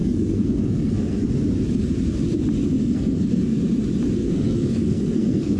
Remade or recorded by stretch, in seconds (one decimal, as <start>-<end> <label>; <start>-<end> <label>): 0.0-1.3 remade; 1.3-2.8 recorded; 2.8-3.6 remade; 3.6-4.2 recorded; 4.2-5.6 remade